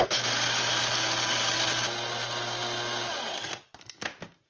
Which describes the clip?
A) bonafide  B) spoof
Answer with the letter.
A